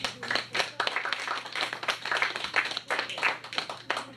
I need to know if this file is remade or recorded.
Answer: recorded